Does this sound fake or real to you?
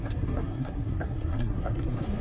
fake